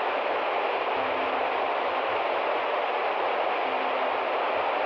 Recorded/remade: recorded